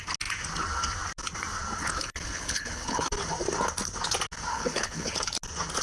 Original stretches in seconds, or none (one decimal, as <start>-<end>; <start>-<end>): 0.0-1.8; 3.1-4.5; 5.3-5.8